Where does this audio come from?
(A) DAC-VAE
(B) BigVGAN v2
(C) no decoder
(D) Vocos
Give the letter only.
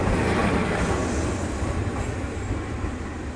C